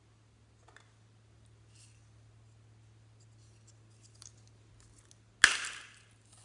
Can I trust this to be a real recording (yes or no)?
yes